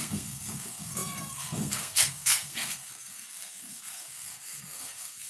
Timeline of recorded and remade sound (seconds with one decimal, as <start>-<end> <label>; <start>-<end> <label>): 0.0-5.3 remade